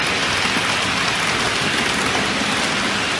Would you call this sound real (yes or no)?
yes